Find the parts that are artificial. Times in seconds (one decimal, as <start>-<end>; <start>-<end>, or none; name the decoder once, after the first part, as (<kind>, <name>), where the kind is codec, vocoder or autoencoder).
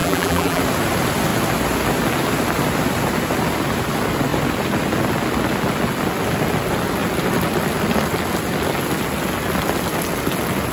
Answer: 0.0-0.6 (vocoder, BigVGAN v2)